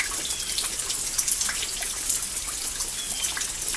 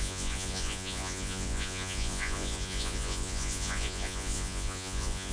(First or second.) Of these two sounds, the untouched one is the first